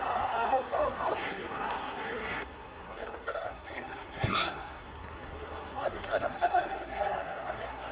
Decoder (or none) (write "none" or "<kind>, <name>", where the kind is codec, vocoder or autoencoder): codec, SNAC